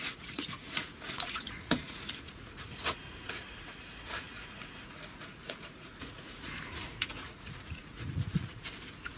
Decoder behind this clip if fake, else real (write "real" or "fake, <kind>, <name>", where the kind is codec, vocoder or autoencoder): fake, vocoder, Vocos